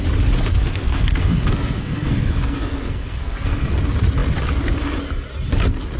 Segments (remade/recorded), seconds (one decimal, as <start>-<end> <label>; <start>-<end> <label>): 0.0-0.5 recorded; 0.5-3.8 remade; 3.8-6.0 recorded